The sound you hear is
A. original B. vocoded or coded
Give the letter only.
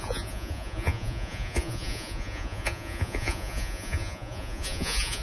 B